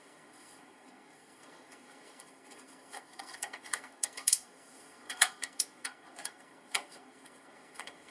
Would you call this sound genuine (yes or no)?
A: no